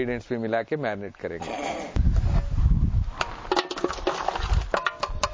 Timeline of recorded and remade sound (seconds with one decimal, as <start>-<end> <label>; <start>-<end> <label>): 0.0-5.3 recorded